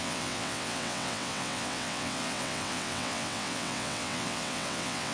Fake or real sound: fake